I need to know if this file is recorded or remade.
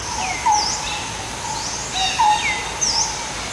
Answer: recorded